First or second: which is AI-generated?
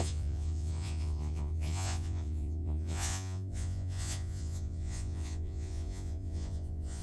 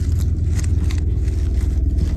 first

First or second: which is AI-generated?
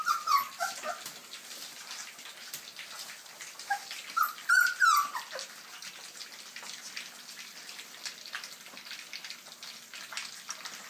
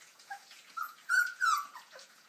second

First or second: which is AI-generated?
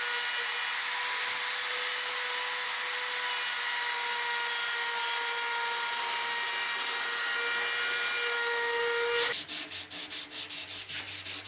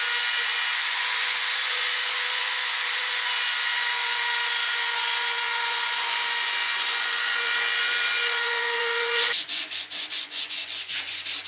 second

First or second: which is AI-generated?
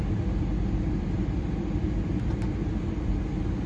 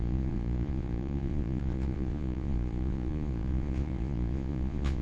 second